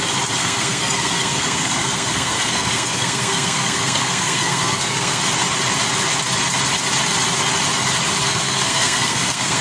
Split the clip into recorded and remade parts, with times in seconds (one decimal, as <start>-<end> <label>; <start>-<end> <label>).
0.0-0.4 recorded; 0.4-5.2 remade; 5.2-8.2 recorded; 8.2-9.6 remade